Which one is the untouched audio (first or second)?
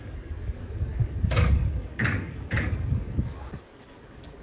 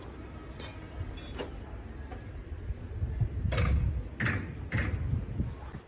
second